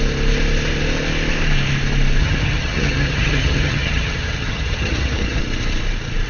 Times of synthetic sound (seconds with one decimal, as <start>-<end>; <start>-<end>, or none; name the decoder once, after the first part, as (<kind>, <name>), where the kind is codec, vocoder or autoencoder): 2.2-5.4 (vocoder, HiFi-GAN)